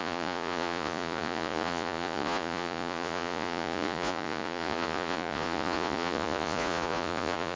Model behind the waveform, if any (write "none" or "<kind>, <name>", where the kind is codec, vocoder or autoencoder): vocoder, Vocos